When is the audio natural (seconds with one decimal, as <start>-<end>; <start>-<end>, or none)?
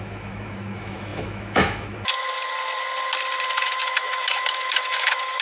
2.1-3.5